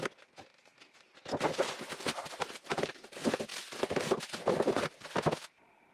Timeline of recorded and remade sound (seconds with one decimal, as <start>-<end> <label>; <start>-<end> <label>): 0.0-5.9 recorded

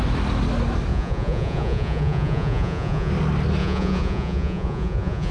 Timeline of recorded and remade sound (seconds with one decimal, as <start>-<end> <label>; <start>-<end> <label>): 0.0-0.9 recorded; 0.9-3.1 remade; 3.1-3.6 recorded; 3.6-5.3 remade

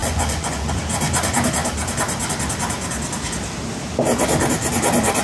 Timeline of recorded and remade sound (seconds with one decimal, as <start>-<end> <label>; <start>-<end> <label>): 0.0-0.8 remade; 0.8-5.2 recorded

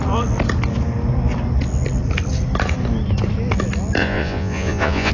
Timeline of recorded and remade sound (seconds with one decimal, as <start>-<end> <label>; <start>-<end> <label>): 0.0-4.0 recorded; 4.0-5.1 remade